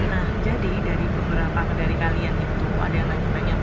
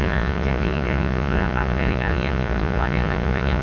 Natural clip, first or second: first